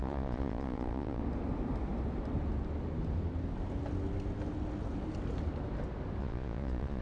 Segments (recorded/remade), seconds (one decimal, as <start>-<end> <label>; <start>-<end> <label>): 0.0-1.2 remade; 1.2-6.2 recorded; 6.2-7.0 remade